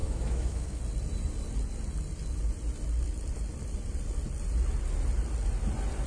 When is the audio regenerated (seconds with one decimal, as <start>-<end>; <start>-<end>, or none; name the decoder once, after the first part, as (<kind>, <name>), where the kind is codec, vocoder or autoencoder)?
0.0-0.8 (autoencoder, DAC-VAE)